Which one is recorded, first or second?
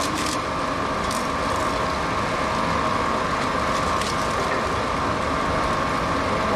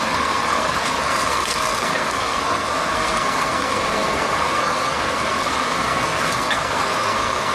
first